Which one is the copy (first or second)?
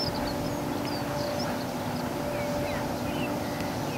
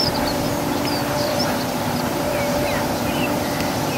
second